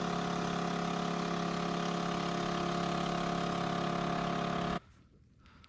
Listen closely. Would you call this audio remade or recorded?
recorded